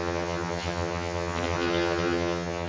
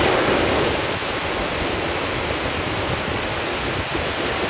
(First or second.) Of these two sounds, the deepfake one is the first